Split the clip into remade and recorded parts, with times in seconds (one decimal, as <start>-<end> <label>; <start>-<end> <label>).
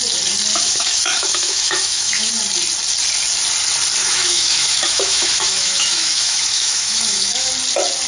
0.0-0.5 recorded; 0.5-2.3 remade; 2.3-4.0 recorded; 4.0-7.5 remade; 7.5-8.1 recorded